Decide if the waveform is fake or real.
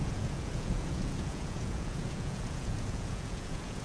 fake